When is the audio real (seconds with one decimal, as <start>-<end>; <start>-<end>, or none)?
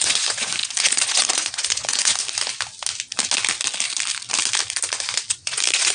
2.1-5.3